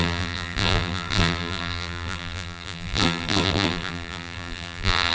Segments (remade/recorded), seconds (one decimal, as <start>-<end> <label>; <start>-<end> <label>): 0.0-5.1 remade

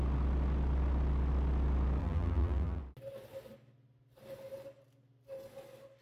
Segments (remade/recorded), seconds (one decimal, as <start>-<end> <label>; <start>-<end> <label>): 0.0-2.0 recorded; 2.0-2.8 remade; 2.8-6.0 recorded

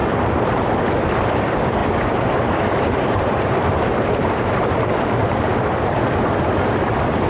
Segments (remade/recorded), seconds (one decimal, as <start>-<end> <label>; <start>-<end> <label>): 0.0-0.7 remade; 0.7-1.8 recorded; 1.8-4.9 remade; 4.9-7.3 recorded

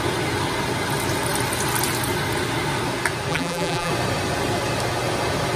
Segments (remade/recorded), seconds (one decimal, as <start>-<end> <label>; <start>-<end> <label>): 0.0-3.3 recorded; 3.3-3.9 remade; 3.9-5.6 recorded

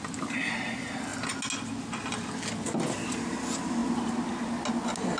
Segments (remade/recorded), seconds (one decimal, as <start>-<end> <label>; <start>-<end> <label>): 0.0-5.2 recorded

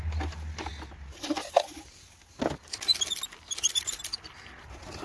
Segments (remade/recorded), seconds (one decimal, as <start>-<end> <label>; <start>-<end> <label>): 0.0-5.0 recorded